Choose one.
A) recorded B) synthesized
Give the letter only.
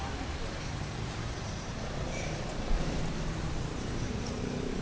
B